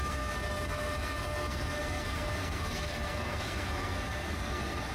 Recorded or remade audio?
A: remade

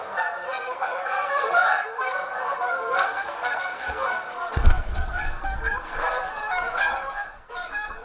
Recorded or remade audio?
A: remade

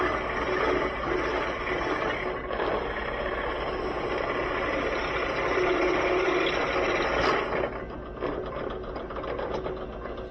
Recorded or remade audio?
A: recorded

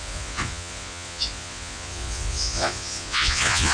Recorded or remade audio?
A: remade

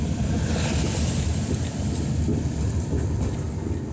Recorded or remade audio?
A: recorded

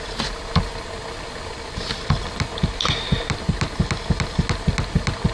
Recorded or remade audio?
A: recorded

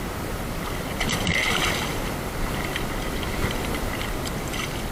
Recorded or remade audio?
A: remade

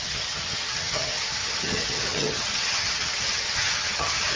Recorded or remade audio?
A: remade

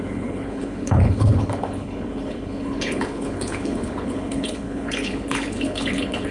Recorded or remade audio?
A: remade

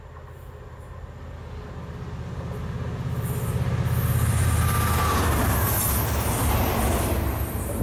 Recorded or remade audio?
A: recorded